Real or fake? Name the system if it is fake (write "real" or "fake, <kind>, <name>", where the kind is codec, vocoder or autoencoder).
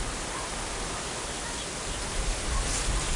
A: real